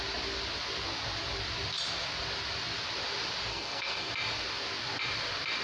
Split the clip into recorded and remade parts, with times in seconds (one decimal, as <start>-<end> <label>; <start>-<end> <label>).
0.0-3.5 recorded; 3.5-4.1 remade; 4.1-5.6 recorded